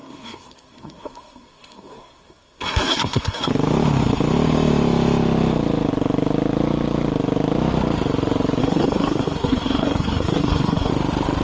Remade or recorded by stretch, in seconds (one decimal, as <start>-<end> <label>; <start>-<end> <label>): 0.0-3.5 remade; 3.5-8.6 recorded; 8.6-10.9 remade; 10.9-11.4 recorded

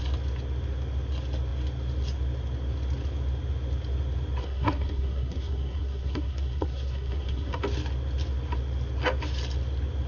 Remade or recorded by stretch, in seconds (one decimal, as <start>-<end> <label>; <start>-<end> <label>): 0.0-4.4 recorded; 4.4-7.6 remade; 7.6-10.1 recorded

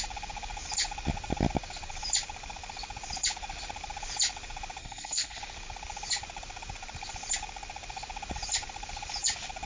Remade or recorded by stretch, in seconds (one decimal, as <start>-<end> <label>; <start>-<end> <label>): 0.0-4.8 recorded; 4.8-5.4 remade; 5.4-9.7 recorded

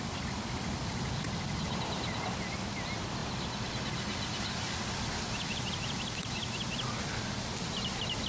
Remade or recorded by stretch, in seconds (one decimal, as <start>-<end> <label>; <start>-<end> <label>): 0.0-8.3 recorded

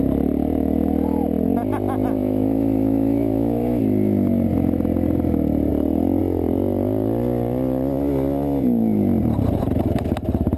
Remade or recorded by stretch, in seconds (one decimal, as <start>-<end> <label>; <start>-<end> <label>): 0.0-2.2 recorded; 2.2-3.8 remade; 3.8-10.6 recorded

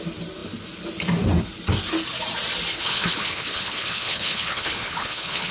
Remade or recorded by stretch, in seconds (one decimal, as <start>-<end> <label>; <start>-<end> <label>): 0.0-2.7 recorded; 2.7-5.5 remade

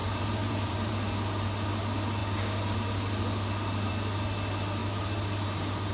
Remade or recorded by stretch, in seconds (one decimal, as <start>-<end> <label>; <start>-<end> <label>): 0.0-0.9 remade; 0.9-4.8 recorded; 4.8-5.9 remade

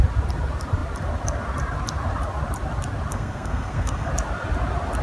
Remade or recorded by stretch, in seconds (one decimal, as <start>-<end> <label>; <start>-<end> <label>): 0.0-3.1 recorded; 3.1-4.1 remade; 4.1-5.0 recorded